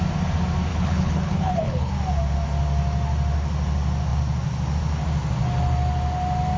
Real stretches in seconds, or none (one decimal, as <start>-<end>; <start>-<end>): 0.0-0.7; 1.9-6.6